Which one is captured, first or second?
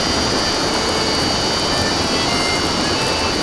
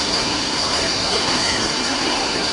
first